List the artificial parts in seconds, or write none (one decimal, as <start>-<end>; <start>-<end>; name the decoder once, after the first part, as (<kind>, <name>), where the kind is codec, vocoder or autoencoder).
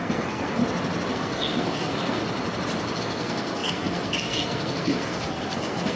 0.0-0.6 (codec, SNAC); 1.1-2.2; 3.0-6.0